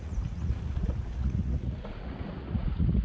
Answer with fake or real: fake